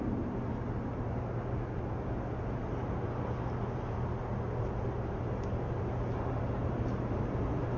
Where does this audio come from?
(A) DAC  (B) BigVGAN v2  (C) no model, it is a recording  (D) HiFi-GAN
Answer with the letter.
C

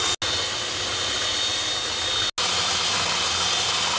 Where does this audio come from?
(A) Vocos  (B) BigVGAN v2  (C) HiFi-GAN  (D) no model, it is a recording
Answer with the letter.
D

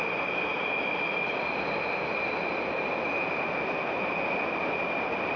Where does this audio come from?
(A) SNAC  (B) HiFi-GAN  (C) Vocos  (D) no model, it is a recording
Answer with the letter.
D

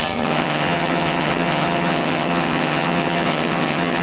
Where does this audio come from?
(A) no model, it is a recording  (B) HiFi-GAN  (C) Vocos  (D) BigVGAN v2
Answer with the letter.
B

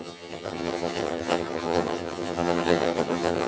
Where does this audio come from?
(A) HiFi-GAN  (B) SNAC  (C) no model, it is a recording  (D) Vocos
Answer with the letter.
A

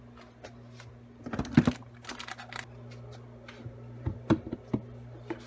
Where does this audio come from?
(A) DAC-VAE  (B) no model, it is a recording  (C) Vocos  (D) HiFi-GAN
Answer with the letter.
B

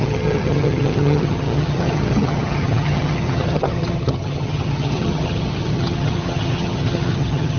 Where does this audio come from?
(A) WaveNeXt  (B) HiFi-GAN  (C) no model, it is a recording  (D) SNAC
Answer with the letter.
B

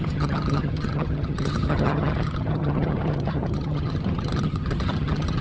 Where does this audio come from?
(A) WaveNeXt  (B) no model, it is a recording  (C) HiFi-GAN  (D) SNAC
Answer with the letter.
C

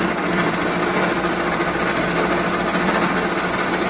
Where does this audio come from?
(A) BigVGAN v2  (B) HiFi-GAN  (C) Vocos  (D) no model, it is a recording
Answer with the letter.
D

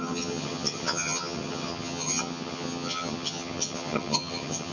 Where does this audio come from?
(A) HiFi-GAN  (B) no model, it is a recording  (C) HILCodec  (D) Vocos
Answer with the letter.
A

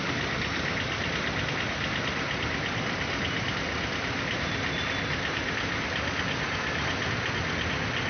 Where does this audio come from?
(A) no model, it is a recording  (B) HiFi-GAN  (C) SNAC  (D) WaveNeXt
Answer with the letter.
A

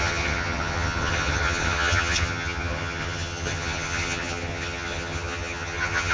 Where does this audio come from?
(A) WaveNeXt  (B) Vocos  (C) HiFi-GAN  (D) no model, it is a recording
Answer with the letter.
C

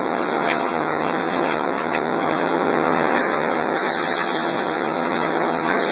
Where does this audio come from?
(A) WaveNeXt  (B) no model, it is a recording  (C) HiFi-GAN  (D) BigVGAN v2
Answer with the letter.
C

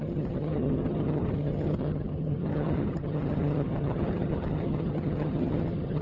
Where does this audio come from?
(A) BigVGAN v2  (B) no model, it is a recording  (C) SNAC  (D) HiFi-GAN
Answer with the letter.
D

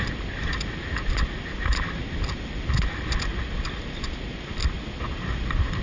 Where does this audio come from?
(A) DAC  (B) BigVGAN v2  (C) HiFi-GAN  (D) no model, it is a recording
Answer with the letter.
D